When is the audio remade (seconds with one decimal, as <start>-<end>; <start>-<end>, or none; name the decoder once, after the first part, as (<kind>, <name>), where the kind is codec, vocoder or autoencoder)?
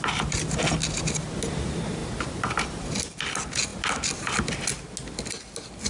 none